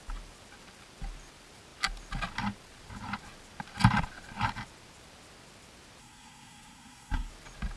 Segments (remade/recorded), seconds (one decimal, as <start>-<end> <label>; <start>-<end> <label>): 0.0-6.0 recorded; 6.0-7.3 remade; 7.3-7.8 recorded